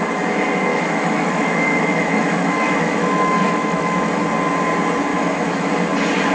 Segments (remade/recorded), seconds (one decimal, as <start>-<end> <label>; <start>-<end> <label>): 0.0-0.7 recorded; 0.7-4.1 remade; 4.1-5.1 recorded; 5.1-5.7 remade; 5.7-6.3 recorded